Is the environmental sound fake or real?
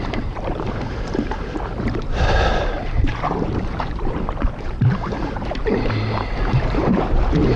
fake